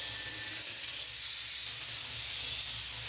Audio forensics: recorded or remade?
recorded